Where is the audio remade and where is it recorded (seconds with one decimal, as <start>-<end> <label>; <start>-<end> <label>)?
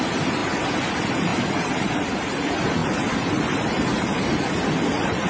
0.0-0.4 remade; 0.4-0.9 recorded; 0.9-1.3 remade; 1.3-2.2 recorded; 2.2-2.8 remade; 2.8-3.4 recorded; 3.4-5.3 remade